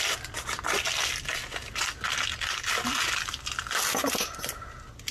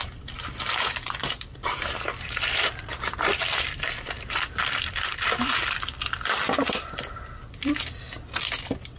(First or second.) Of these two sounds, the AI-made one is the second